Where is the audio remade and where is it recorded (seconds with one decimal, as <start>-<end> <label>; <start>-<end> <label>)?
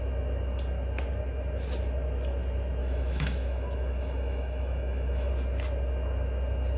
0.0-2.8 recorded; 2.8-5.3 remade; 5.3-6.8 recorded